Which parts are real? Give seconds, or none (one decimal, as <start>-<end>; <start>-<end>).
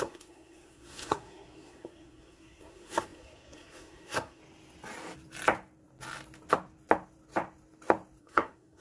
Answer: 4.4-8.2